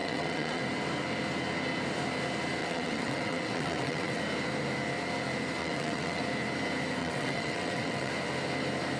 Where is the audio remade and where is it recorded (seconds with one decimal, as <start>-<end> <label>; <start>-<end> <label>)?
0.0-0.6 remade; 0.6-2.6 recorded; 2.6-4.2 remade; 4.2-5.6 recorded; 5.6-6.2 remade; 6.2-7.0 recorded; 7.0-8.1 remade; 8.1-9.0 recorded